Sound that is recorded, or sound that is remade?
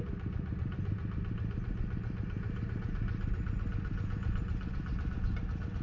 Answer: recorded